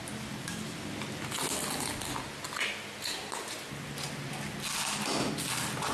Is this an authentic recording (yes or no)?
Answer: yes